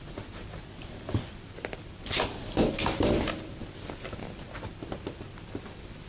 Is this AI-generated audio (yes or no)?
no